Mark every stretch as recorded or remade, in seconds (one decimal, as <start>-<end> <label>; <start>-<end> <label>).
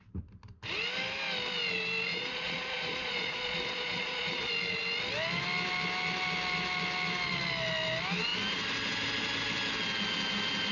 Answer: 0.0-2.1 recorded; 2.1-4.5 remade; 4.5-10.7 recorded